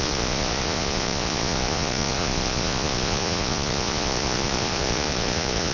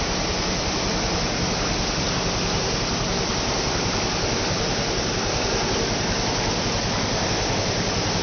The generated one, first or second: first